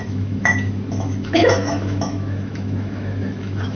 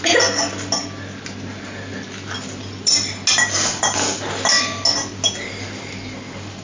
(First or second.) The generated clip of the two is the first